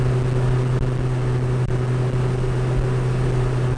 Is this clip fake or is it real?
real